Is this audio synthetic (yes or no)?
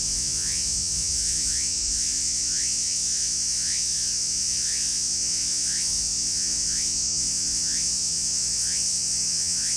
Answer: yes